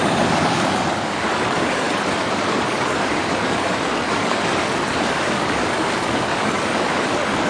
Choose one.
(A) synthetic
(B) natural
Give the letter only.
A